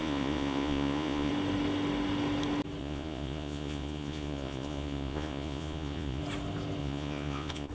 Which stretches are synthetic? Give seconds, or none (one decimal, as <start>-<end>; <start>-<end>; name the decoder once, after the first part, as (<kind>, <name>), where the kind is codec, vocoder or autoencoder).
0.0-1.3 (vocoder, Vocos); 2.8-6.2; 6.8-7.7